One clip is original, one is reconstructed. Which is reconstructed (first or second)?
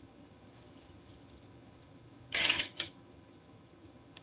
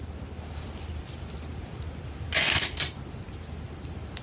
first